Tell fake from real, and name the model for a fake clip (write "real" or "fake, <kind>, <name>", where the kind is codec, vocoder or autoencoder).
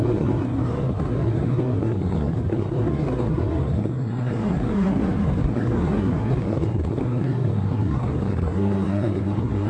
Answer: fake, codec, SNAC